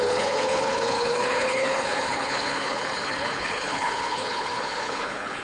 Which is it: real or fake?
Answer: fake